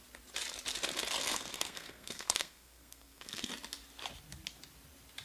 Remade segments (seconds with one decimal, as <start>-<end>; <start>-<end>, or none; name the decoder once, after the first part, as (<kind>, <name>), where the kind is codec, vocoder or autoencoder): 1.2-3.5 (codec, SNAC)